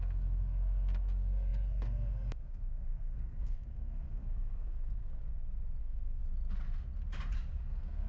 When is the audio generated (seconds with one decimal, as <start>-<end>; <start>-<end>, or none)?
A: 0.0-5.2; 5.8-6.2; 7.6-8.1